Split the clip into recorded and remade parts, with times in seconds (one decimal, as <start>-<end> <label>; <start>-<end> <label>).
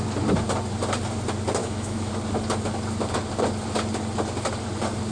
0.0-1.6 recorded; 1.6-2.1 remade; 2.1-5.1 recorded